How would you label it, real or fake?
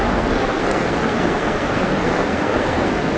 fake